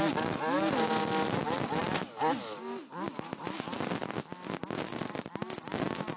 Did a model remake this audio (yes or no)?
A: no